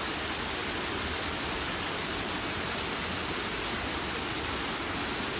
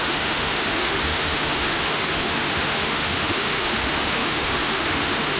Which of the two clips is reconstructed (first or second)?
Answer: second